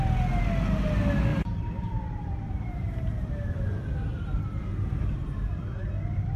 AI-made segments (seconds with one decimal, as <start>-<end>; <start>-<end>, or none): 1.3-3.3; 4.7-5.5